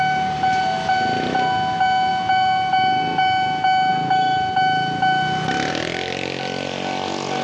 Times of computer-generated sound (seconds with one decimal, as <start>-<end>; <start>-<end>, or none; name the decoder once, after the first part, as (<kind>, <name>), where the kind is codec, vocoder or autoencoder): none